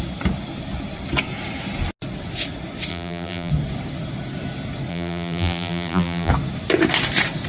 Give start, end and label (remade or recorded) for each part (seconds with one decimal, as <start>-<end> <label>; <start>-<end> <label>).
0.0-2.9 recorded; 2.9-3.5 remade; 3.5-4.9 recorded; 4.9-6.3 remade; 6.3-7.5 recorded